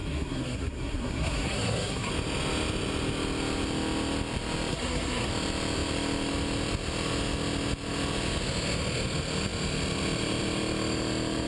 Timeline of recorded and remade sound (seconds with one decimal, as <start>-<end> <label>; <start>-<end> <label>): 0.0-2.1 remade; 2.1-4.7 recorded; 4.7-5.3 remade; 5.3-11.5 recorded